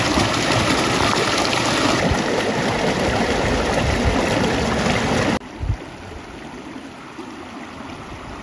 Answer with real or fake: real